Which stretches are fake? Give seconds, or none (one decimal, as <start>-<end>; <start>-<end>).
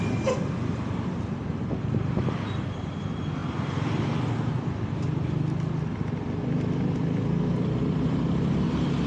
none